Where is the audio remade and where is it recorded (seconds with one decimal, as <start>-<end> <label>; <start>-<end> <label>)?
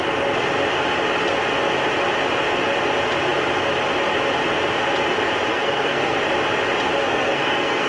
0.0-5.5 recorded; 5.5-6.2 remade; 6.2-7.0 recorded; 7.0-7.9 remade